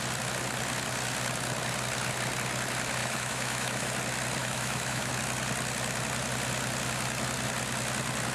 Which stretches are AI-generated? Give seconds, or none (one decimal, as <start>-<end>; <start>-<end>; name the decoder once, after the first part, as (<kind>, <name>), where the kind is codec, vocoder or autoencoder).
3.0-3.9 (autoencoder, DAC-VAE); 4.4-5.1